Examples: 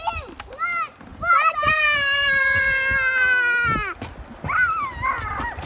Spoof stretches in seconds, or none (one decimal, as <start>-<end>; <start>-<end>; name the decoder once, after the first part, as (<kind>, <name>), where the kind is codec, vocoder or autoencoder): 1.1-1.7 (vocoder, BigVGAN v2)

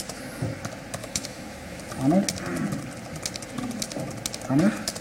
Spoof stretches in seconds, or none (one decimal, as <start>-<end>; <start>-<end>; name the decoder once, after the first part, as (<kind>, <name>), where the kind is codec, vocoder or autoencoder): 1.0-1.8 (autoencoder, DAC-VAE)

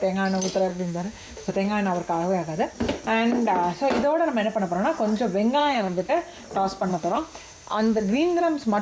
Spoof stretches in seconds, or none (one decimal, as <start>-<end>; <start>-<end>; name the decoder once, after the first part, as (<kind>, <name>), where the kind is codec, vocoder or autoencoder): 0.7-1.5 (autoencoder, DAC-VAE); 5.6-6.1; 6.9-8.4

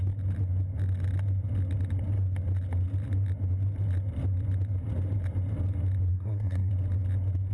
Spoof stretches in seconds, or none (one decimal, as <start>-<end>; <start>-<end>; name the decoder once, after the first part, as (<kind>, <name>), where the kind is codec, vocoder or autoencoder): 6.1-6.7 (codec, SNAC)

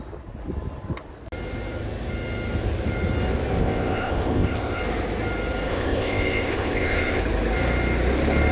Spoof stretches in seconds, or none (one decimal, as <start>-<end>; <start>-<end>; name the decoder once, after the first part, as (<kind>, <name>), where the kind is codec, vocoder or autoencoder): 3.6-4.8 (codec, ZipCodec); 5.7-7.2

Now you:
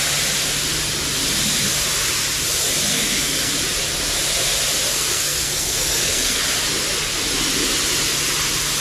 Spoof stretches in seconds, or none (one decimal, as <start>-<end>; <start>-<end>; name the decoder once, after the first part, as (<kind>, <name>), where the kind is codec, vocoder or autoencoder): 2.9-3.5 (codec, SNAC); 4.9-6.4